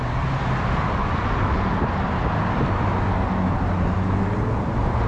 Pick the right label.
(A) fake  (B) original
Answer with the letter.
B